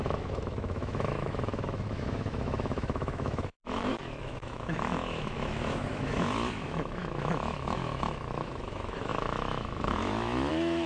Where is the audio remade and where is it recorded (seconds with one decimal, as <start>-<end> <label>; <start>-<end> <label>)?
0.0-10.9 remade

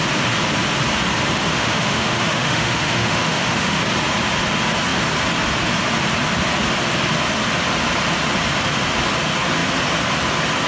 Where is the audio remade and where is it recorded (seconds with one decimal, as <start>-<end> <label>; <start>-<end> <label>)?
0.0-1.5 recorded; 1.5-3.8 remade; 3.8-10.7 recorded

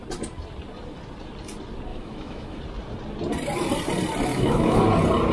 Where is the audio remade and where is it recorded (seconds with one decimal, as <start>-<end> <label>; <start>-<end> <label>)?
0.0-1.9 recorded; 1.9-2.6 remade; 2.6-4.3 recorded; 4.3-4.8 remade; 4.8-5.3 recorded

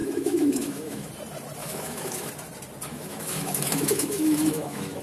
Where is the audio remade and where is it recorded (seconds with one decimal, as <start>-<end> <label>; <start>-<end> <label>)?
0.0-1.1 remade; 1.1-1.6 recorded; 1.6-2.3 remade; 2.3-2.9 recorded; 2.9-5.0 remade